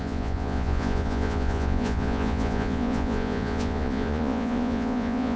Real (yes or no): no